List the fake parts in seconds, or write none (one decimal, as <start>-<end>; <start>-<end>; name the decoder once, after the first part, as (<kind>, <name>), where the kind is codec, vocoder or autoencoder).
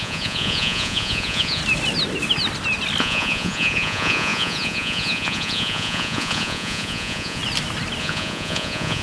0.0-1.6 (vocoder, Vocos); 3.0-7.4; 8.0-9.0